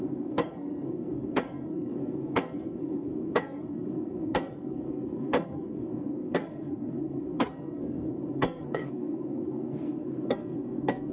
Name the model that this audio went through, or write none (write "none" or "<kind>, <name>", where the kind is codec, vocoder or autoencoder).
codec, SNAC